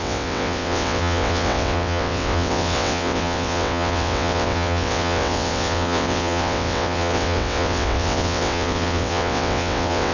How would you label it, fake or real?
fake